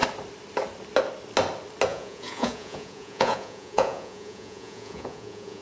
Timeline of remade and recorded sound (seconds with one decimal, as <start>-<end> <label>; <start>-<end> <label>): 0.0-1.9 recorded; 1.9-5.6 remade